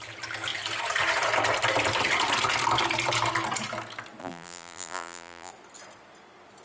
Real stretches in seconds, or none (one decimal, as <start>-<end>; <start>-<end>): 0.0-4.2; 5.5-6.6